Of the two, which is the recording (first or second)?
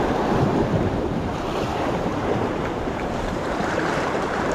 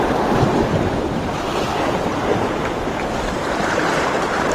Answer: second